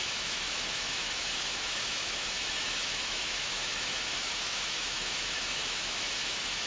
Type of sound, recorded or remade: remade